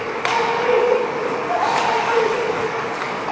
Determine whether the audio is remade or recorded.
remade